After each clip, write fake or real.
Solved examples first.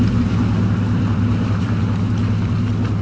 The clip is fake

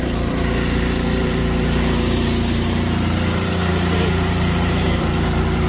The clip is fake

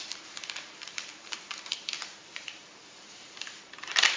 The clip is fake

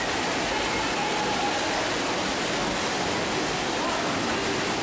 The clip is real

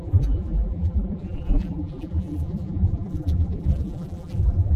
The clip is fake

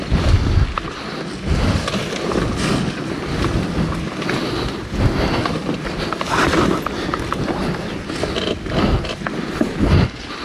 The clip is real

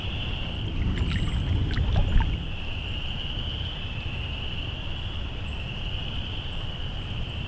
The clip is real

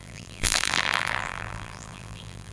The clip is fake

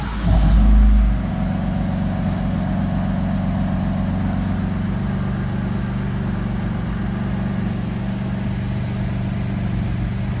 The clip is real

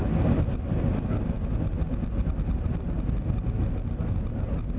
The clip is real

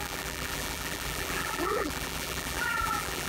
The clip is fake